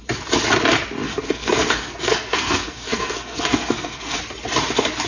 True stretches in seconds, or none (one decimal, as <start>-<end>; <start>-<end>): 0.0-1.1; 4.2-5.1